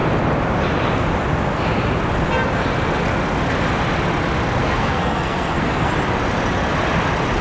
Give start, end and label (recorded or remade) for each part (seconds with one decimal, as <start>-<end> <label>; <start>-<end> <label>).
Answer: 0.0-4.6 recorded; 4.6-5.9 remade; 5.9-7.4 recorded